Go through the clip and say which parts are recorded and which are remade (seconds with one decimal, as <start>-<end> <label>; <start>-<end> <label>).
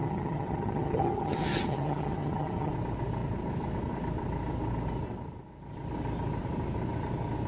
0.0-2.7 remade; 2.7-7.5 recorded